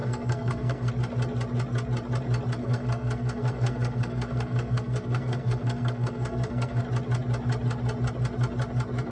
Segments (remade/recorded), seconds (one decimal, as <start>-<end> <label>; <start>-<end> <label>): 0.0-0.9 remade; 0.9-2.6 recorded; 2.6-6.8 remade; 6.8-9.1 recorded